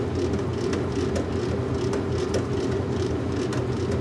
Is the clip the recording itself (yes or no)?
yes